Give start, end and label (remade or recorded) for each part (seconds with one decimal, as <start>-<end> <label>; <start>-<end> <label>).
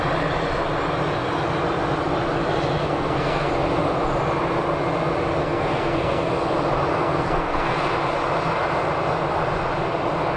0.0-2.8 recorded; 2.8-3.5 remade; 3.5-5.4 recorded; 5.4-6.3 remade; 6.3-6.9 recorded; 6.9-7.8 remade; 7.8-10.4 recorded